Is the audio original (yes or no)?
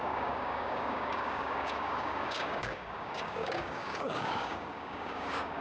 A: no